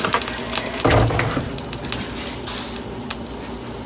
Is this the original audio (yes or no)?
yes